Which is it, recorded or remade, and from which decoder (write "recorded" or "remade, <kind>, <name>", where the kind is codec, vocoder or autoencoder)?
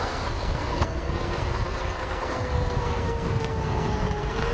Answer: remade, codec, SNAC